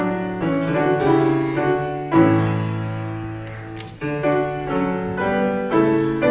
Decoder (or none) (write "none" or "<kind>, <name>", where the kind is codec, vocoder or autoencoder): none